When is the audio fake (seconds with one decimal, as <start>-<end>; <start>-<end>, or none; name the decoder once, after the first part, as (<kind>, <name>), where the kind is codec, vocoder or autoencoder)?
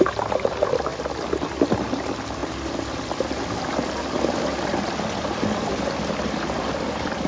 0.0-0.9 (vocoder, BigVGAN v2); 1.7-2.4; 5.0-7.3